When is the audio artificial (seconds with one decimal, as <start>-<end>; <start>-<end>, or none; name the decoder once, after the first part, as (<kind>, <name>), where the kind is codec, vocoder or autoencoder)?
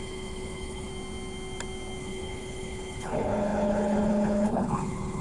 0.0-0.9 (codec, HILCodec); 2.0-5.2